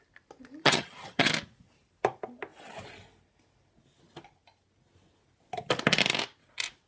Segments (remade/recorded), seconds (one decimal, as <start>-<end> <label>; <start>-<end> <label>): 0.0-0.6 recorded; 0.6-1.3 remade; 1.3-6.9 recorded